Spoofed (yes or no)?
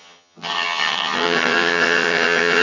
yes